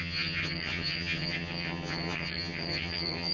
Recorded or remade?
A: remade